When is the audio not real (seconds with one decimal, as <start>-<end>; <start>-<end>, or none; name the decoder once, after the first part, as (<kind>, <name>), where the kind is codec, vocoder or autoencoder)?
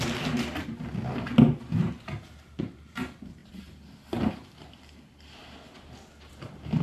none